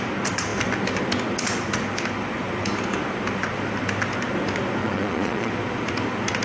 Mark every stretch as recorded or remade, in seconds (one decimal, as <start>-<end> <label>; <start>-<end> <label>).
0.0-4.8 recorded; 4.8-5.5 remade; 5.5-6.4 recorded